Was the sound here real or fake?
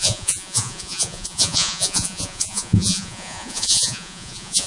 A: fake